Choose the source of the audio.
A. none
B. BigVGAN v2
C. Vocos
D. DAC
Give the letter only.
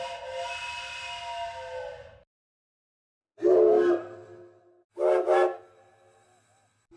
A